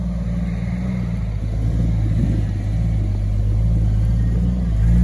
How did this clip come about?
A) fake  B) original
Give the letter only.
B